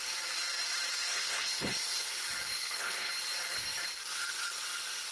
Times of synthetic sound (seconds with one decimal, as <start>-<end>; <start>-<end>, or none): 1.1-2.1; 2.6-3.1